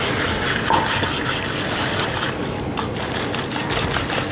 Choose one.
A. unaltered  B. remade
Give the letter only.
A